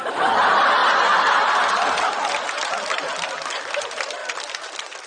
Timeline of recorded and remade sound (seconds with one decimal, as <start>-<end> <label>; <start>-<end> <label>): 0.0-5.1 recorded

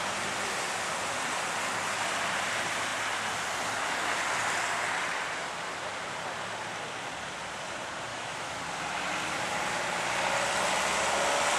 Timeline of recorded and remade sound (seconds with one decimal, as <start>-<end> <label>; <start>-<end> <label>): 0.0-8.1 recorded; 8.1-8.6 remade; 8.6-11.6 recorded